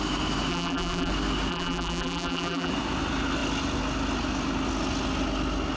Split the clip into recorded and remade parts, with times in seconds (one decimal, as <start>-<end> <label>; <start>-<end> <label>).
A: 0.0-0.5 recorded; 0.5-1.1 remade; 1.1-1.5 recorded; 1.5-2.7 remade; 2.7-5.8 recorded